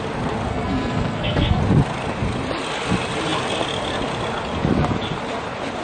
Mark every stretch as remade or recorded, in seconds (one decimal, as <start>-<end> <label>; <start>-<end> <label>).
0.0-0.5 recorded; 0.5-1.6 remade; 1.6-5.8 recorded